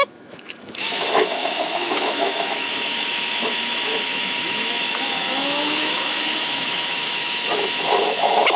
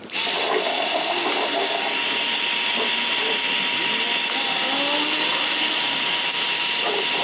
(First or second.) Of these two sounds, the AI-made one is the first